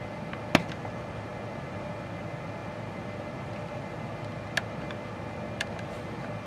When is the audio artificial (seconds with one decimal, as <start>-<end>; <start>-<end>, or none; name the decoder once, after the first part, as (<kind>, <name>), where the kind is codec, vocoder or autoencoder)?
none